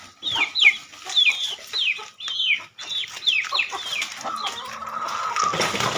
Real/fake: real